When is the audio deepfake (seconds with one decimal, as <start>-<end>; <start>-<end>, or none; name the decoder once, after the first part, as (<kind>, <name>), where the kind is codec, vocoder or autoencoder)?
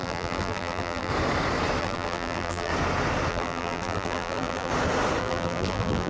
0.0-1.1 (vocoder, BigVGAN v2); 1.8-2.7; 3.3-4.7; 5.2-6.1